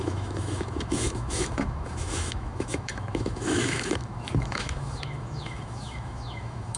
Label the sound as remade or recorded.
remade